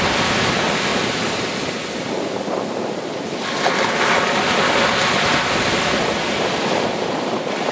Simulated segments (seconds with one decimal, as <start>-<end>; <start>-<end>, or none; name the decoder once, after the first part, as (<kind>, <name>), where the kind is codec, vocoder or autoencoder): none